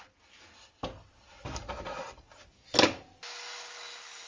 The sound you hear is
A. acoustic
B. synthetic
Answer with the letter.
A